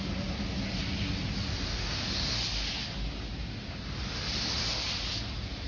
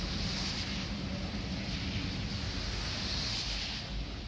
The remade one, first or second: second